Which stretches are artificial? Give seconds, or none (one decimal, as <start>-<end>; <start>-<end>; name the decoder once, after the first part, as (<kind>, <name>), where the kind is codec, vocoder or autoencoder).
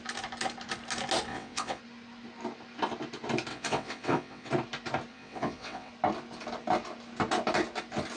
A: 1.3-1.8 (vocoder, WaveNeXt); 3.5-4.5; 5.1-5.9